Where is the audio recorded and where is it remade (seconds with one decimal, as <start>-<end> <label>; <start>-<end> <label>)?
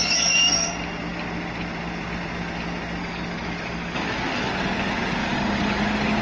0.0-3.0 recorded; 3.0-4.5 remade; 4.5-5.2 recorded; 5.2-5.8 remade; 5.8-6.2 recorded